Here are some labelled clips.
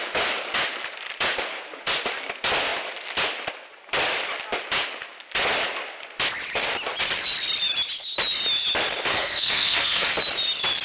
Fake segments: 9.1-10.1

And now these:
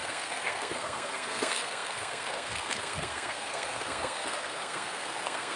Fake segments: 0.0-5.6

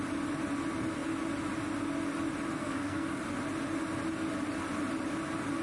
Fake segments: 2.6-3.2